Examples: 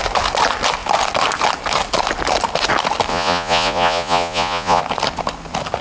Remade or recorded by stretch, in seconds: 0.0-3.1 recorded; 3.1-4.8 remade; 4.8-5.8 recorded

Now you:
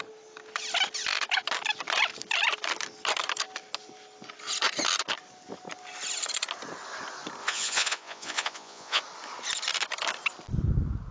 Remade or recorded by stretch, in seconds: 0.0-7.4 recorded; 7.4-9.0 remade; 9.0-11.1 recorded

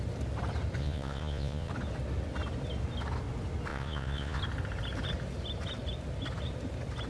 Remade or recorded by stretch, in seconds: 0.0-0.8 recorded; 0.8-1.7 remade; 1.7-3.7 recorded; 3.7-4.4 remade; 4.4-7.1 recorded

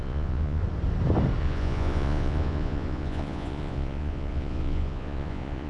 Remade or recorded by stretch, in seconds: 0.0-0.6 remade; 0.6-1.4 recorded; 1.4-5.7 remade

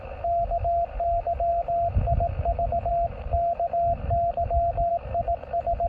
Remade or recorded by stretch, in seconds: 0.0-5.9 recorded

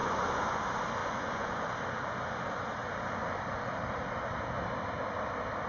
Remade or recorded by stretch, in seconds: 0.0-0.6 remade; 0.6-1.0 recorded; 1.0-1.6 remade; 1.6-5.7 recorded